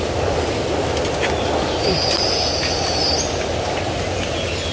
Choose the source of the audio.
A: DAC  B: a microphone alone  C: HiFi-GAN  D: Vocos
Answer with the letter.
B